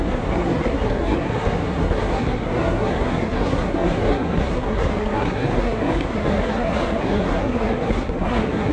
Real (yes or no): no